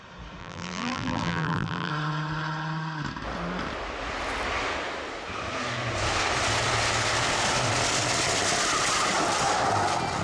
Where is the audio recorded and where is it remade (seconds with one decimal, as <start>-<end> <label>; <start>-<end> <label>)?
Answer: 0.0-0.4 recorded; 0.4-1.9 remade; 1.9-10.2 recorded